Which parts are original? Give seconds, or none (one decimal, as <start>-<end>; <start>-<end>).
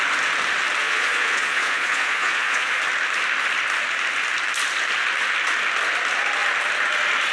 0.0-0.8; 2.8-7.3